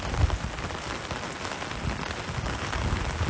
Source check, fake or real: real